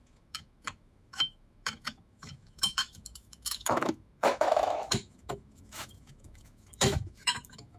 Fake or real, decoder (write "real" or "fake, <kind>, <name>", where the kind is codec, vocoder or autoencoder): fake, autoencoder, DAC-VAE